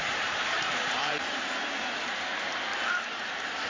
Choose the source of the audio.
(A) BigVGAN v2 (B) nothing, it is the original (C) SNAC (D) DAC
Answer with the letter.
A